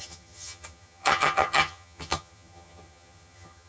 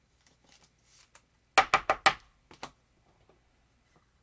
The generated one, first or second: first